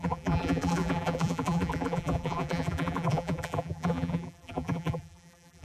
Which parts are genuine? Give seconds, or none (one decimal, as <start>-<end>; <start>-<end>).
none